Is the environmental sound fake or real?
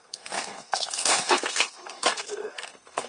fake